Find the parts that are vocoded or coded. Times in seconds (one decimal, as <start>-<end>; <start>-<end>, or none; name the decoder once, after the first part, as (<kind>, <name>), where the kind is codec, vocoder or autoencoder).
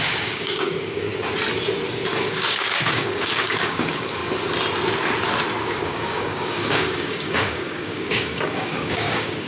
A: 0.0-1.1 (codec, DAC); 2.2-4.2; 5.6-9.5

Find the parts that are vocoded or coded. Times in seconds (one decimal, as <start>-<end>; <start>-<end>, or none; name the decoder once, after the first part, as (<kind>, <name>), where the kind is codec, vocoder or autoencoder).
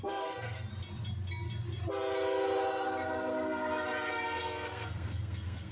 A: 0.0-0.7 (codec, SNAC); 4.1-5.7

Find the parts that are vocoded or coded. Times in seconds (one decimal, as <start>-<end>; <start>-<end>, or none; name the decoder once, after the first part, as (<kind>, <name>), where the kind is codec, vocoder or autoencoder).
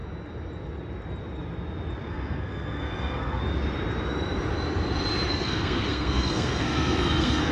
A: 2.1-3.4 (codec, SNAC); 5.3-7.5